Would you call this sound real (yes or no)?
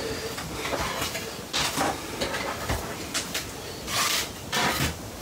yes